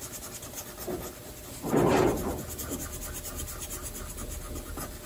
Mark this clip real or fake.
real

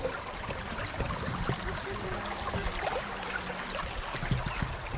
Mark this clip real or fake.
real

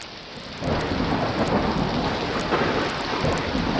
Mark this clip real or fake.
real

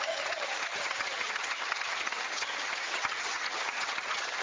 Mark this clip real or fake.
fake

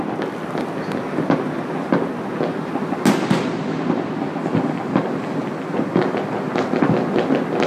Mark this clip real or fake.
real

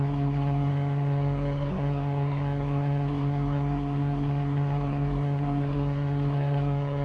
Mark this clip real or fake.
fake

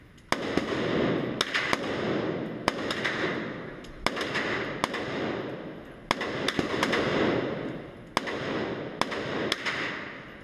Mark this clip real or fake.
real